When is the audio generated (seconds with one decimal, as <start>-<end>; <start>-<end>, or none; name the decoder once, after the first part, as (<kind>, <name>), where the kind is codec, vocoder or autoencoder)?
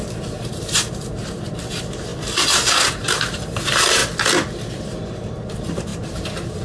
0.0-2.1 (vocoder, BigVGAN v2); 2.9-4.0; 4.7-6.6